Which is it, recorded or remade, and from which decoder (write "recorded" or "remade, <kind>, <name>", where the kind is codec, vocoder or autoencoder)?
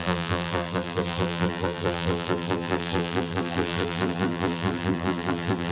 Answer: remade, vocoder, BigVGAN v2